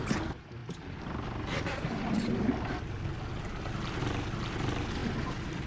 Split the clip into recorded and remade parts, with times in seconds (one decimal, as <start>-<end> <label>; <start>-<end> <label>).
0.0-5.7 recorded